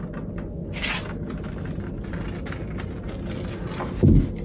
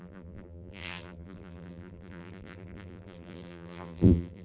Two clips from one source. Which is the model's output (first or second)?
second